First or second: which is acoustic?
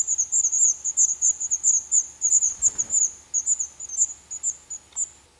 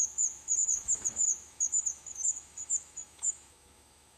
first